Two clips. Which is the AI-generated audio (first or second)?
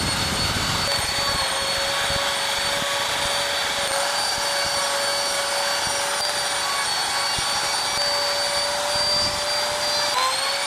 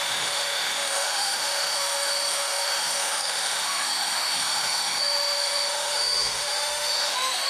second